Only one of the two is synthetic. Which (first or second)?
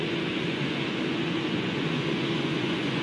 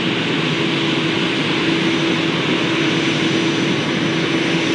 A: first